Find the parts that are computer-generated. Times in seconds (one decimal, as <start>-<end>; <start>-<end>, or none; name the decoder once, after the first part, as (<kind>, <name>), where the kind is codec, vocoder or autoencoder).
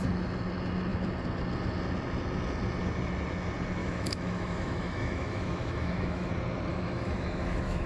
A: 3.8-6.3 (autoencoder, DAC-VAE); 6.7-7.9